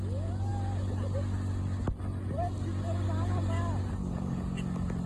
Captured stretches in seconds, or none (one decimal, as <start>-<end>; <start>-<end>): 0.0-4.0; 4.6-5.1